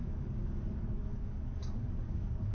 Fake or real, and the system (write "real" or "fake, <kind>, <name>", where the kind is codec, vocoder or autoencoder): fake, codec, DAC